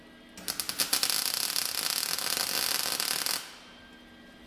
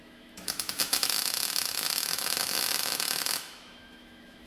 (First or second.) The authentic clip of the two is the first